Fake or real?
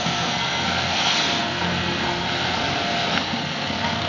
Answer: fake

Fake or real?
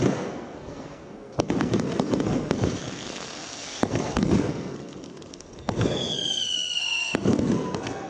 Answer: fake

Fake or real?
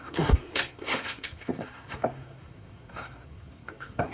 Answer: fake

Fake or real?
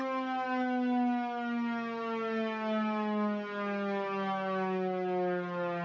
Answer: real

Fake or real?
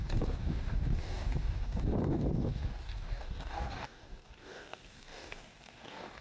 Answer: fake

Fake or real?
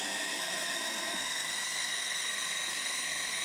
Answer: fake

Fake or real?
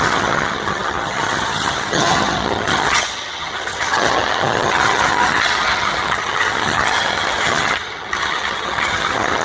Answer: fake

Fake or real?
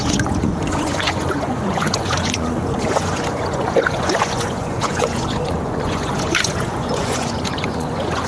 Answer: fake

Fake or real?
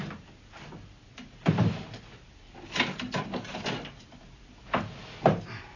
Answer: real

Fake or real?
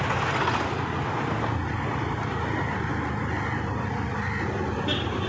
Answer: real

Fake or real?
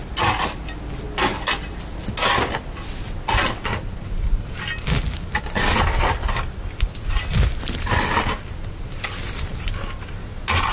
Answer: real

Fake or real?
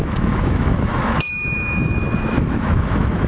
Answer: fake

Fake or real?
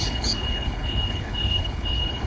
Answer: fake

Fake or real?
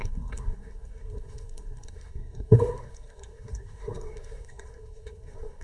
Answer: fake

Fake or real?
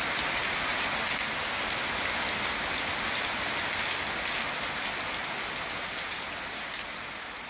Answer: real